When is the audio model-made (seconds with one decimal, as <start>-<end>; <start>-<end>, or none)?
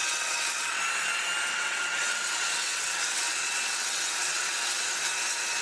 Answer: 0.0-0.8; 1.5-4.9